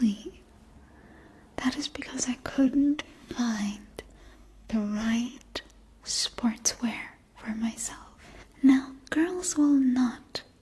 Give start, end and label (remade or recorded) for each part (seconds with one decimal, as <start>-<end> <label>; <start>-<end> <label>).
0.0-2.5 recorded; 2.5-3.6 remade; 3.6-4.2 recorded; 4.2-5.4 remade; 5.4-10.6 recorded